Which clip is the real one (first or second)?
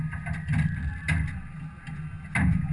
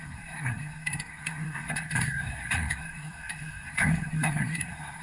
first